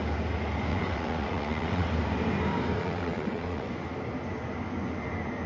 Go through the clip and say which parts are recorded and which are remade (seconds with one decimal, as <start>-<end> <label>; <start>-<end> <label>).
0.0-0.7 recorded; 0.7-1.9 remade; 1.9-2.8 recorded; 2.8-3.7 remade; 3.7-5.5 recorded